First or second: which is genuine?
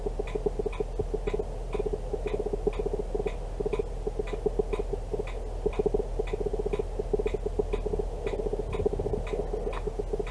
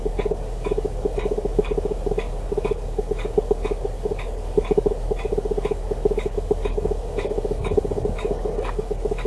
first